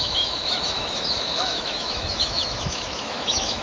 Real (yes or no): no